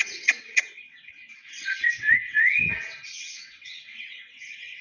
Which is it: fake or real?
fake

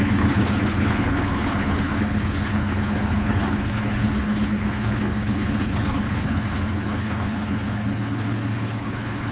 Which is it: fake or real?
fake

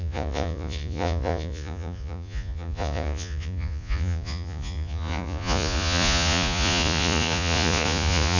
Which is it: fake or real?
fake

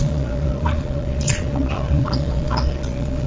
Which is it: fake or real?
fake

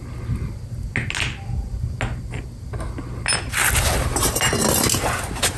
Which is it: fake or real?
real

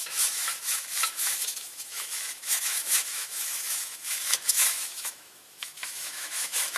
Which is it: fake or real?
fake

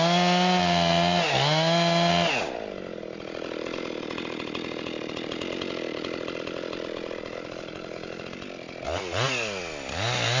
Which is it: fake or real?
real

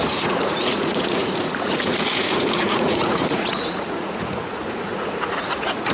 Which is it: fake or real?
fake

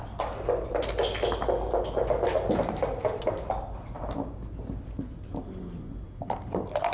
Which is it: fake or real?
real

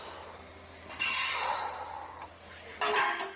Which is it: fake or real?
real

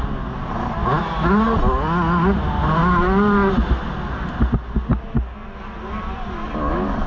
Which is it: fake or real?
real